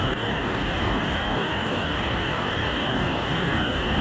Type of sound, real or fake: fake